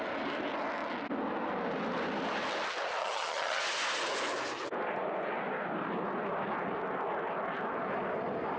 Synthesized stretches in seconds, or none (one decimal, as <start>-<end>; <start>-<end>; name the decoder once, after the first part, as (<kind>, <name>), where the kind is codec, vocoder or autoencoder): 3.0-3.6 (vocoder, HiFi-GAN)